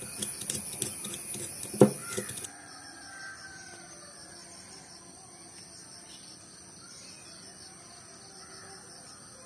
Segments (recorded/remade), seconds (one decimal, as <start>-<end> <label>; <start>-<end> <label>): 0.0-2.0 recorded; 2.0-2.8 remade; 2.8-9.5 recorded